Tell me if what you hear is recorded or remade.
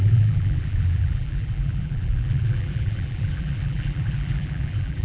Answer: remade